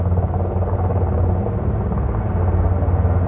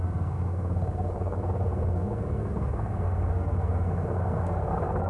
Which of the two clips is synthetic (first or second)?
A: second